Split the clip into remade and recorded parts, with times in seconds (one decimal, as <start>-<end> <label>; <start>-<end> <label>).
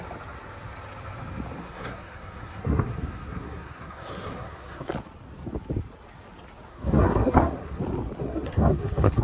0.0-1.6 recorded; 1.6-4.9 remade; 4.9-6.7 recorded; 6.7-7.8 remade; 7.8-8.2 recorded; 8.2-9.2 remade